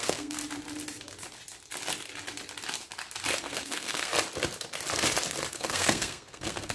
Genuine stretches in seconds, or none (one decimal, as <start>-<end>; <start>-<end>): 0.4-3.4; 4.1-5.5